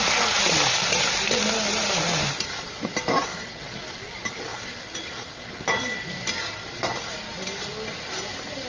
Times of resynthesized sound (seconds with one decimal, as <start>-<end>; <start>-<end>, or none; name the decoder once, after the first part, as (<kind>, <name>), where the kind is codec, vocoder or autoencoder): 0.0-3.3 (vocoder, BigVGAN v2); 3.9-7.3